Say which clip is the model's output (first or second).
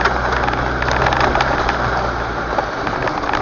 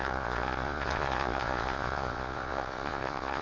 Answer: second